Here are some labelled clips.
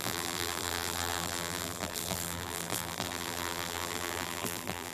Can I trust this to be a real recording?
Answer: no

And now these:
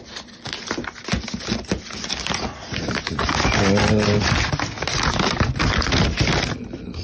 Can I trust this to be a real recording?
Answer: yes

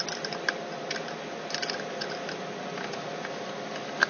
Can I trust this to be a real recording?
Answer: no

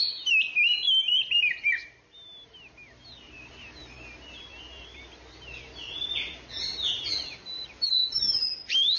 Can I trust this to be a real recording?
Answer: yes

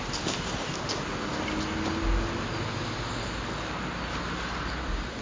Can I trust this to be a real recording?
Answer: yes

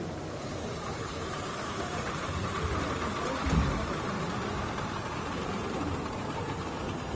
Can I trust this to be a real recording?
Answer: no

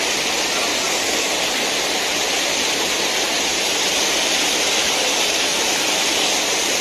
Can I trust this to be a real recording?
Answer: yes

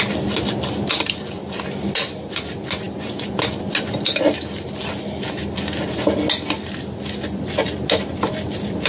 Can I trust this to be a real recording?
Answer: yes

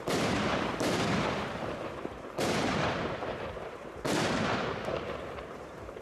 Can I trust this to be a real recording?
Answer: no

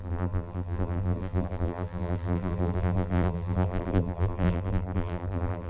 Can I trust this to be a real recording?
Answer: no